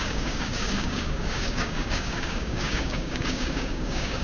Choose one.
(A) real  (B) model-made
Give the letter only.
B